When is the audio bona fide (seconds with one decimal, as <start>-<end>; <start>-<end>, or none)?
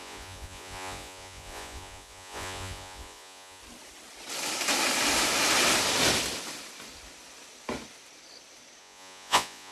3.6-8.8